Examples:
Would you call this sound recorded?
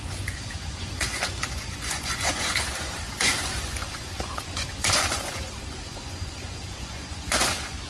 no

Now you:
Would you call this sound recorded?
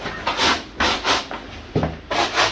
yes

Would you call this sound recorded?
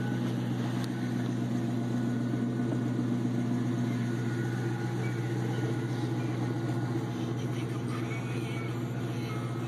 yes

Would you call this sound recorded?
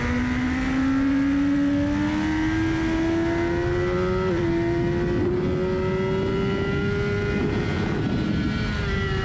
yes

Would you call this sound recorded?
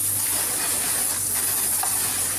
no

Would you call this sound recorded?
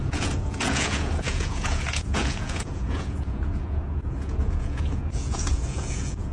no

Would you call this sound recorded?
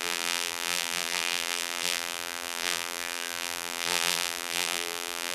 no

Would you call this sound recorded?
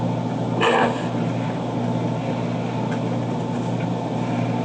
yes